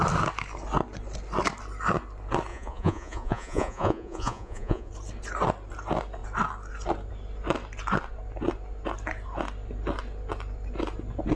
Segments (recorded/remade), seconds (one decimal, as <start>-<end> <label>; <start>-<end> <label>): 0.0-2.5 recorded; 2.5-4.9 remade; 4.9-11.4 recorded